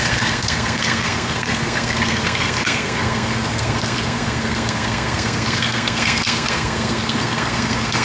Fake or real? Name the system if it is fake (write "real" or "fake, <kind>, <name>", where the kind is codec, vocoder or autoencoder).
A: fake, codec, SNAC